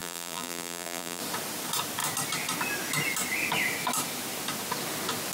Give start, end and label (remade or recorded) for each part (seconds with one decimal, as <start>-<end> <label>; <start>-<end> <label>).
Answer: 0.0-1.2 remade; 1.2-5.3 recorded